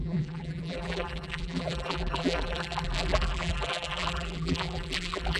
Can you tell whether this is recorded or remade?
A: remade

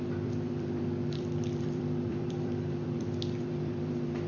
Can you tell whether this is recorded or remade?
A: remade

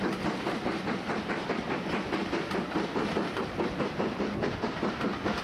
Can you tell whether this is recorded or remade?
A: recorded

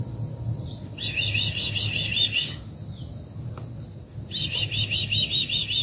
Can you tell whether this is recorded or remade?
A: recorded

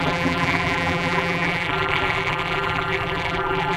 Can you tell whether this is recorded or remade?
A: remade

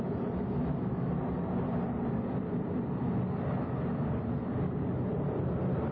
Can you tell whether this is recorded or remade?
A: recorded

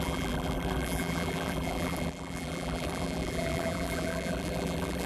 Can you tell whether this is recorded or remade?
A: remade